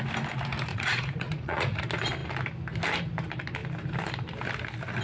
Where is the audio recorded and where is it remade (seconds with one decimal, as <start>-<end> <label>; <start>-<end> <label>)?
0.0-0.7 recorded; 0.7-1.8 remade; 1.8-5.0 recorded